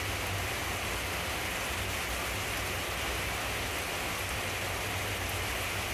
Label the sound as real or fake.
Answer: real